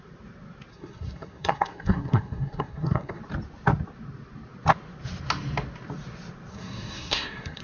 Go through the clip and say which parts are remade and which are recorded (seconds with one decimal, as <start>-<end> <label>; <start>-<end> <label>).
0.0-0.7 recorded; 0.7-3.2 remade; 3.2-6.5 recorded; 6.5-7.6 remade